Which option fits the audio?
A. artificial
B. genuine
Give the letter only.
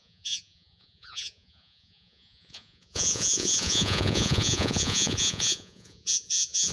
A